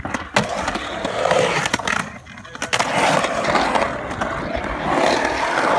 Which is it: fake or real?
real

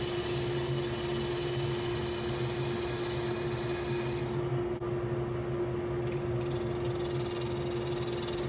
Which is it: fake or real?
real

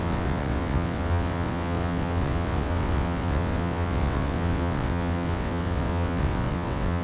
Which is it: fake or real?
fake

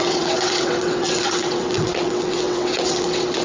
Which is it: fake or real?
fake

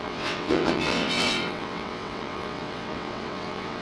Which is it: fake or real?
fake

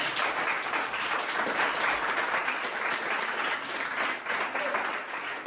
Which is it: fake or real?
real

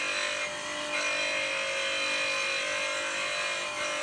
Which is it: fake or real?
real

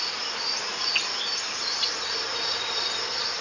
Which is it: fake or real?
real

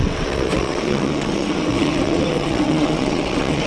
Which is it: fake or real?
fake